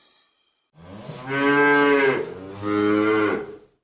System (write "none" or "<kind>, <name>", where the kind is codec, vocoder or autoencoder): none